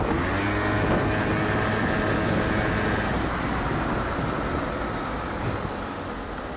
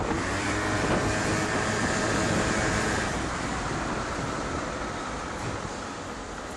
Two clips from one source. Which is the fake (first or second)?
second